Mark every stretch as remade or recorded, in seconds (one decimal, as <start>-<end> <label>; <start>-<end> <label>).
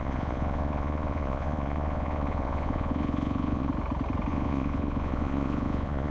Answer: 0.0-3.7 remade; 3.7-4.3 recorded; 4.3-6.1 remade